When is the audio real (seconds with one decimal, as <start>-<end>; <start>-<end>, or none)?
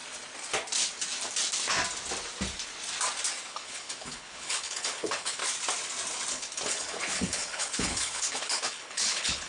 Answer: 0.0-3.5; 5.4-6.3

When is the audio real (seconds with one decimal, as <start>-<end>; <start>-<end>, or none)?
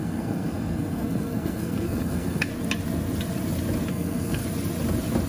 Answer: 2.5-3.9; 4.4-5.3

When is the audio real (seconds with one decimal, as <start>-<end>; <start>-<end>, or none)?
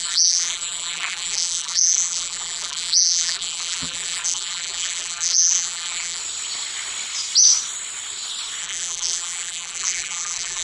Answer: 6.2-8.6